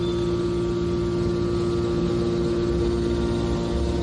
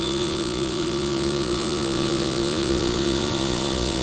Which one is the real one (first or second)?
first